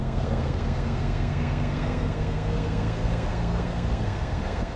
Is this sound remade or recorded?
remade